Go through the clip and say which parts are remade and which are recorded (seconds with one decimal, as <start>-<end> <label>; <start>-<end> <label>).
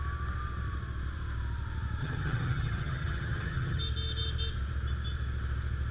0.0-2.0 recorded; 2.0-3.8 remade; 3.8-5.9 recorded